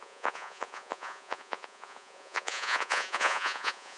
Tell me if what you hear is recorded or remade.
remade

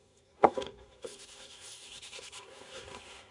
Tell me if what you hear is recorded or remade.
remade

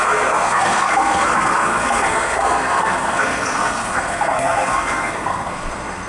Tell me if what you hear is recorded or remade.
remade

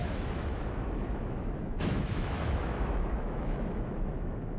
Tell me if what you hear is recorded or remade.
remade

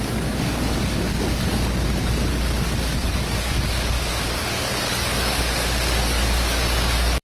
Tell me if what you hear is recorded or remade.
remade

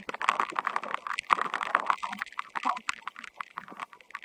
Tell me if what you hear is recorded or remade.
remade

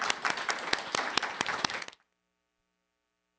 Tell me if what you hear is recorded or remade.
recorded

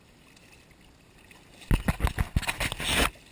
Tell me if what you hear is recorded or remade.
recorded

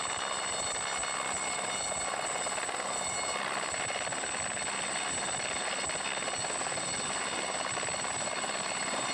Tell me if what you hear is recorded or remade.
recorded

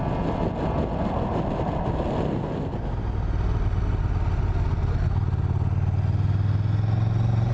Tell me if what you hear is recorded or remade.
recorded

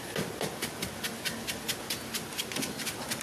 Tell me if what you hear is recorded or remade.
recorded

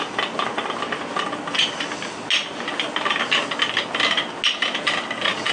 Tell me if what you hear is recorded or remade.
recorded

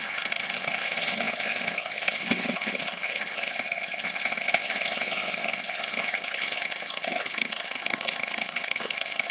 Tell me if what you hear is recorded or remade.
remade